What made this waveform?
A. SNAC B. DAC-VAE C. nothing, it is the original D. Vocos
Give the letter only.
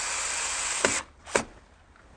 C